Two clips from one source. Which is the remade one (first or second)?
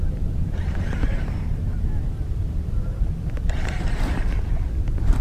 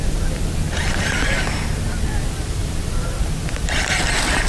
first